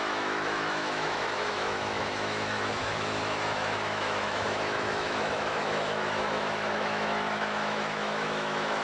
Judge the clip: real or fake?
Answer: fake